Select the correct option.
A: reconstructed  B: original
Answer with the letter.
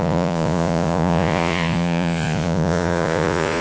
A